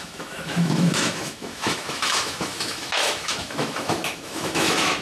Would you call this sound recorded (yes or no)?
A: no